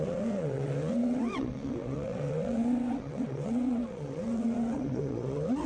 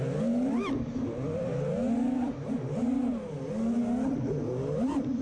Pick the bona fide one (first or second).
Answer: second